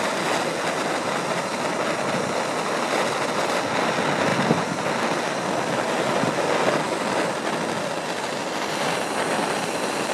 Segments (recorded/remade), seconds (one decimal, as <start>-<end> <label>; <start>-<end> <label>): 0.0-10.1 recorded